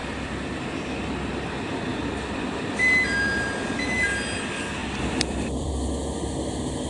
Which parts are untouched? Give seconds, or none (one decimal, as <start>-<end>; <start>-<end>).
0.7-1.9; 3.8-4.8; 5.7-6.9